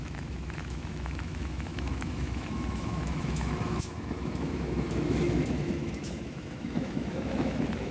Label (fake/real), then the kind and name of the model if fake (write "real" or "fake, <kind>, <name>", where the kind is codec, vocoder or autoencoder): fake, autoencoder, DAC-VAE